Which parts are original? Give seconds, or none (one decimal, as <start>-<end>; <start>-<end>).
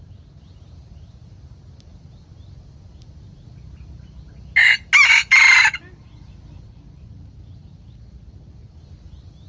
0.0-9.5